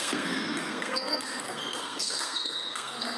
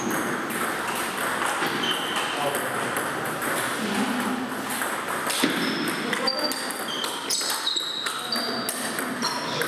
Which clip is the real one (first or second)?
second